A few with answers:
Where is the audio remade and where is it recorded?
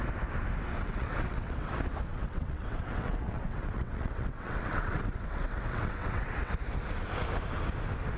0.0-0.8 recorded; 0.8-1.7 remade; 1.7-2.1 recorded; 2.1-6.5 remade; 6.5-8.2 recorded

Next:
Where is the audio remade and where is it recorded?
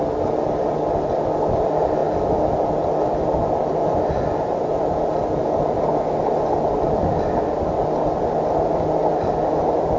0.0-10.0 recorded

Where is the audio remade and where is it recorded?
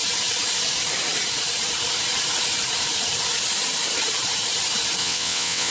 0.0-5.0 recorded; 5.0-5.7 remade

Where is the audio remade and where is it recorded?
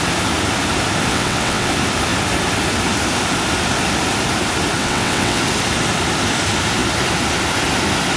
0.0-1.1 recorded; 1.1-1.7 remade; 1.7-4.8 recorded; 4.8-5.4 remade; 5.4-8.2 recorded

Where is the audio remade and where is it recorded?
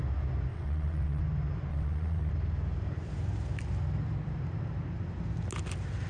0.0-0.5 recorded; 0.5-1.2 remade; 1.2-1.7 recorded; 1.7-2.3 remade; 2.3-6.1 recorded